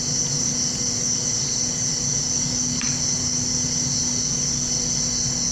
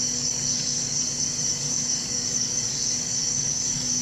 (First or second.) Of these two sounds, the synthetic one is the second